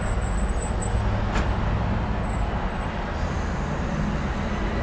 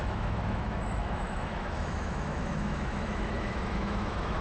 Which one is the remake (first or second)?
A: second